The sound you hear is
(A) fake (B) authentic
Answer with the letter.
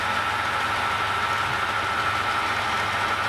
B